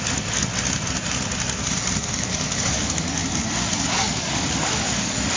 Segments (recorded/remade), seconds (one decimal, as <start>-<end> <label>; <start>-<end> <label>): 0.0-0.5 remade; 0.5-2.0 recorded; 2.0-3.2 remade; 3.2-3.8 recorded; 3.8-5.4 remade